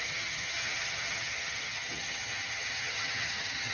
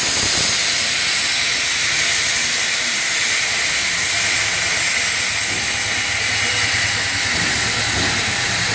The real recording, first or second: second